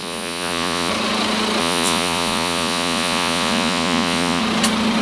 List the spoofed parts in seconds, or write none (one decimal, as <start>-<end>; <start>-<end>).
0.0-0.9; 1.6-4.4